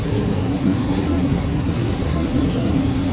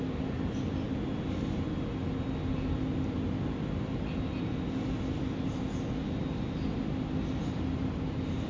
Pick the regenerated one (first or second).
first